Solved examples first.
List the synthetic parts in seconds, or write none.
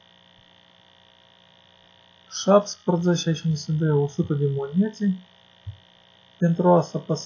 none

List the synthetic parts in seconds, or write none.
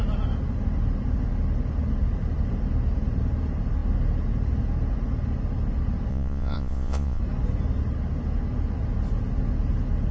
6.1-7.2 (vocoder, Vocos)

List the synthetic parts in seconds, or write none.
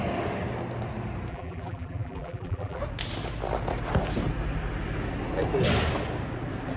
1.3-2.8 (vocoder, BigVGAN v2)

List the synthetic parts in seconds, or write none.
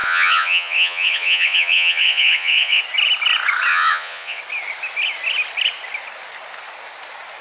0.0-2.8 (vocoder, Vocos); 3.7-4.4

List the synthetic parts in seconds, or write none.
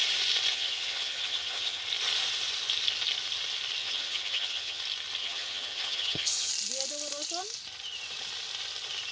0.5-1.8 (vocoder, HiFi-GAN); 3.8-4.8; 5.2-6.5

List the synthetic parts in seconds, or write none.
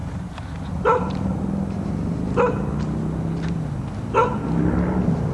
none